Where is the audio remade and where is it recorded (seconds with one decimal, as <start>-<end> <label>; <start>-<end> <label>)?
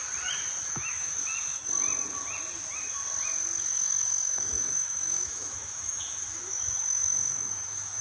0.0-0.7 recorded; 0.7-1.2 remade; 1.2-3.6 recorded; 3.6-8.0 remade